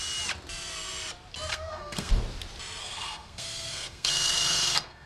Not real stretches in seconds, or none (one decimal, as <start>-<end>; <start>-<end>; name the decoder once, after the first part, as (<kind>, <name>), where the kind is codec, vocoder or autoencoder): 1.5-2.1 (codec, SNAC); 2.8-5.1

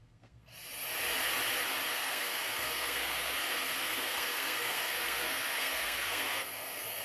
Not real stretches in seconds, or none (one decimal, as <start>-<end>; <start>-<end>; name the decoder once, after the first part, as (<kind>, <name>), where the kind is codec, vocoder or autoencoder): 0.0-0.5 (codec, SNAC); 1.9-7.0